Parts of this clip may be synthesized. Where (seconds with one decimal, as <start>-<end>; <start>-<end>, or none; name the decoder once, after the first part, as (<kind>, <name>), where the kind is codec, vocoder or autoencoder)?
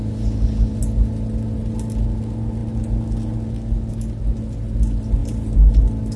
none